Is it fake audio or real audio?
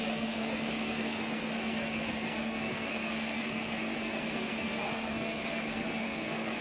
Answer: fake